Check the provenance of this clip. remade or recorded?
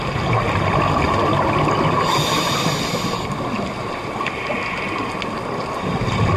recorded